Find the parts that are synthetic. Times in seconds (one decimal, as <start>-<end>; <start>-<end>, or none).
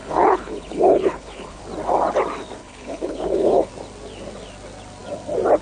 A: 0.0-1.6; 2.6-3.7